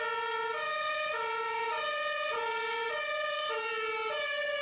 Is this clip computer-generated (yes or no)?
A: no